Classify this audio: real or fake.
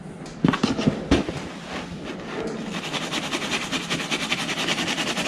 real